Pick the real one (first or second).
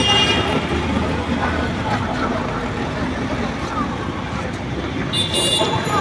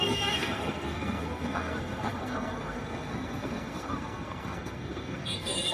first